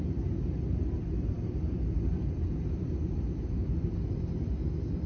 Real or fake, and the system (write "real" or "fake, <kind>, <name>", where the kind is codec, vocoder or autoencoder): fake, vocoder, BigVGAN v2